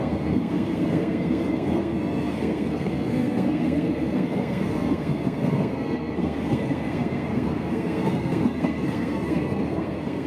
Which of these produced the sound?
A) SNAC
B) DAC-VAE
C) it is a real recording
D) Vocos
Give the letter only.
A